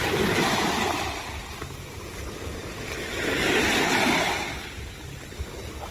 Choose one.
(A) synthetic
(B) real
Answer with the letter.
B